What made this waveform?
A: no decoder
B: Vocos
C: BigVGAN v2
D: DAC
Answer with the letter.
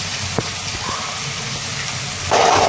A